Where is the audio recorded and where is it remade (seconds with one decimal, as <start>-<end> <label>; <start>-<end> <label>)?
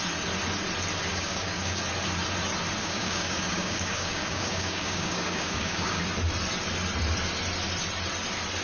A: 0.0-1.1 recorded; 1.1-1.8 remade; 1.8-2.8 recorded; 2.8-6.0 remade; 6.0-8.6 recorded